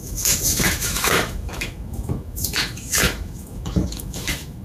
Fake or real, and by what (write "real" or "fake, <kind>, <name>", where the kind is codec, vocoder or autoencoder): fake, autoencoder, DAC-VAE